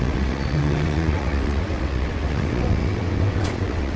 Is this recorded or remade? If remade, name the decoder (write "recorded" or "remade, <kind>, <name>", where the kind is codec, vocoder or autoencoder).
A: remade, vocoder, WaveNeXt